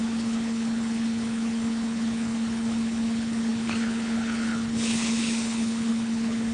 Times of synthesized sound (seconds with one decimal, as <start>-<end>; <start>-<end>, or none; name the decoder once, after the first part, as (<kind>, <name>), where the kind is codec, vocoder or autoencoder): 0.0-6.5 (codec, HILCodec)